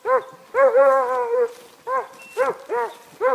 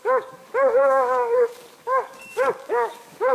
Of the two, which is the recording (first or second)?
first